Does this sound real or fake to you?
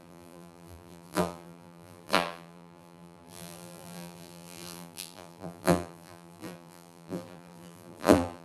fake